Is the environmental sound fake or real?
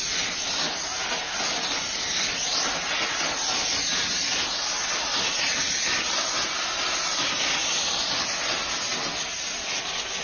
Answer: real